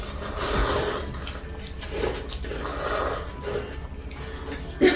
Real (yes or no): yes